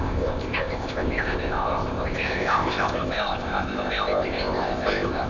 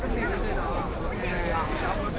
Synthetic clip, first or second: first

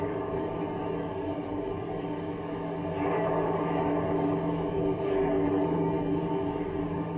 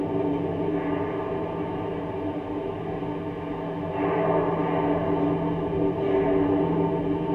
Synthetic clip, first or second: first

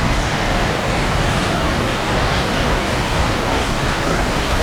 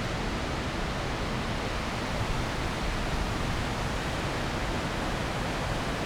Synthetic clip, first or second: first